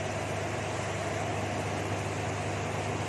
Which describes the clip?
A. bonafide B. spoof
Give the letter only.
A